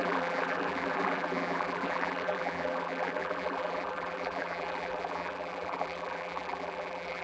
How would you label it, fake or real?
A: fake